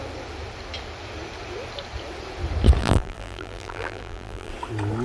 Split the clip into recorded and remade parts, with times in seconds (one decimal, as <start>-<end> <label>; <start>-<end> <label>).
0.0-2.8 recorded; 2.8-4.5 remade; 4.5-5.0 recorded